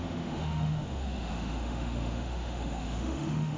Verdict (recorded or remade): remade